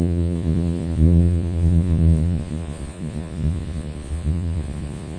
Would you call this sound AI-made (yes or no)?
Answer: yes